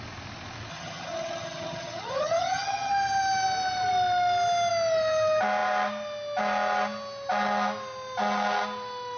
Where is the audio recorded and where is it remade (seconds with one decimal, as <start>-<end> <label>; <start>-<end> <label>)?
0.0-0.7 recorded; 0.7-2.9 remade; 2.9-9.2 recorded